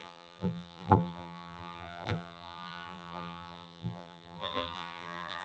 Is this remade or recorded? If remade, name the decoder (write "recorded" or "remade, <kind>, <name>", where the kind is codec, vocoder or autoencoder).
remade, vocoder, BigVGAN v2